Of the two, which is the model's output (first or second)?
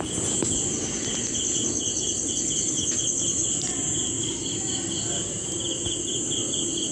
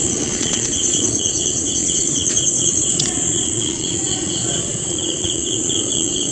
second